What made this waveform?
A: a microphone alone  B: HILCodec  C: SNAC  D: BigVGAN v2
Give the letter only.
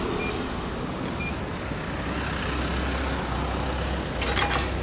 A